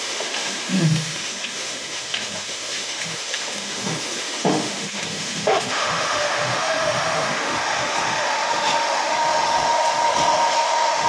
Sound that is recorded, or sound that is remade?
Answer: remade